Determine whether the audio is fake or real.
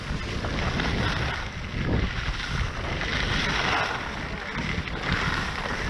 real